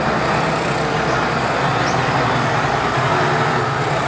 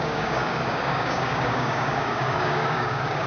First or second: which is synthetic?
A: second